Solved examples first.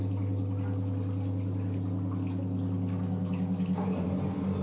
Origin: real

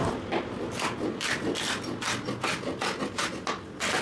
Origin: real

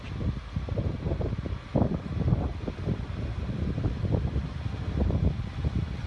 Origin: real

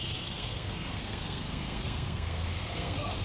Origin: fake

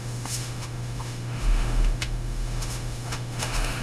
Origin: fake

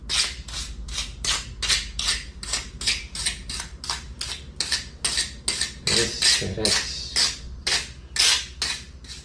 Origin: real